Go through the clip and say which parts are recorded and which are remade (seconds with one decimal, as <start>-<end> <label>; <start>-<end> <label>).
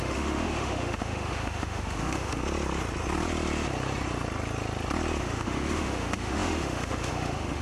0.0-2.4 remade; 2.4-5.2 recorded; 5.2-7.6 remade